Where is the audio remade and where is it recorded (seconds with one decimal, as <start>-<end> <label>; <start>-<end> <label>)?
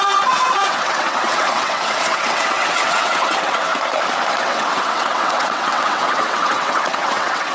0.0-3.7 remade; 3.7-4.4 recorded; 4.4-7.5 remade